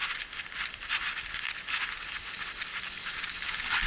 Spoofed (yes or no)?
no